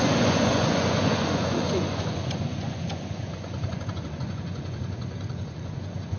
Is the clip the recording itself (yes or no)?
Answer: no